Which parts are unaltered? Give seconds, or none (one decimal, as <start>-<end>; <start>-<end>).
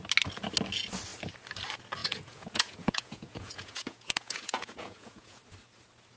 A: 0.0-2.0; 5.4-6.2